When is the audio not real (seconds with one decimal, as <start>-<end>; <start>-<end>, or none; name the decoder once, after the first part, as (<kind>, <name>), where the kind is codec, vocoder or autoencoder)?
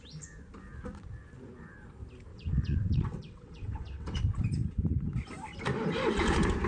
2.3-4.2 (vocoder, WaveNeXt)